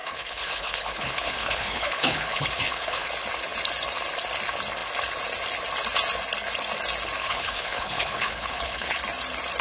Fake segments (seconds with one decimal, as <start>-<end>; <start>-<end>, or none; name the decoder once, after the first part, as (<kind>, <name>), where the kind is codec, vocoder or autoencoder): 0.0-3.1 (codec, HILCodec); 7.2-9.0